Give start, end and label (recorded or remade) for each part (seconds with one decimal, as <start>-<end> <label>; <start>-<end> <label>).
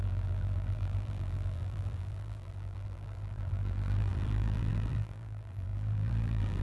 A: 0.0-6.6 remade